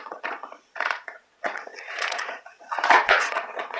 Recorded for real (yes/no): no